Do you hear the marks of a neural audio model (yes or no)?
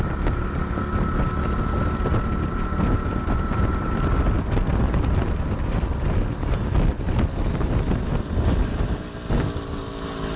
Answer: no